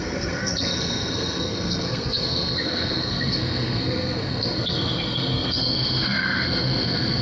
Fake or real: fake